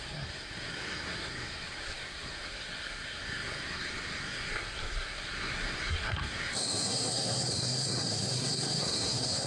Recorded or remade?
remade